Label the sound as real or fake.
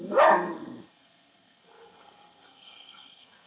fake